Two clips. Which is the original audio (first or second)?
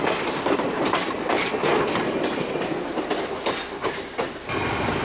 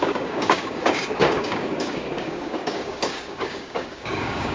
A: first